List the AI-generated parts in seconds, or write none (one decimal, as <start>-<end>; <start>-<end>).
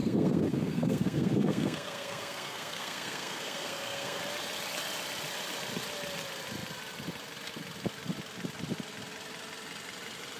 0.0-4.2